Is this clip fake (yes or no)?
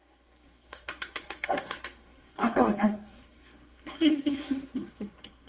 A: yes